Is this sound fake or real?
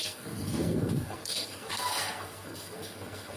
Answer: fake